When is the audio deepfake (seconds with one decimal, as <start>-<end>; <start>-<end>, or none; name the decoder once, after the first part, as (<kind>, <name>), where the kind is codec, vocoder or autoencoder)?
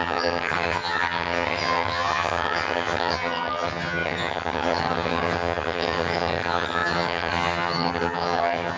0.0-8.8 (vocoder, HiFi-GAN)